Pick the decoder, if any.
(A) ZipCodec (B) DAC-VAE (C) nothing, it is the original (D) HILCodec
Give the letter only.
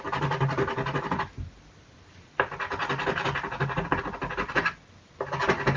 C